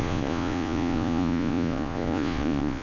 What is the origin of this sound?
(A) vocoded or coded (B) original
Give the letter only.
A